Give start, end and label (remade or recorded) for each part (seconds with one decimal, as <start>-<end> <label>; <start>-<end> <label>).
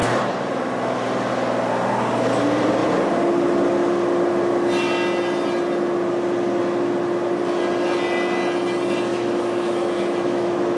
0.0-9.1 recorded; 9.1-10.8 remade